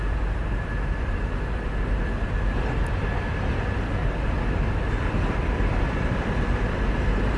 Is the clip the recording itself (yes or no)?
no